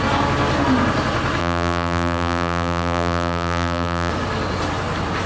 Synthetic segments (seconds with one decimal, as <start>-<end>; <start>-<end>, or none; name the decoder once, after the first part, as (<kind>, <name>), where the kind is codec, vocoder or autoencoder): 1.4-4.1 (vocoder, BigVGAN v2)